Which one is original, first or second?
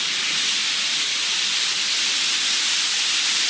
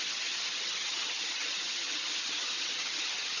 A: first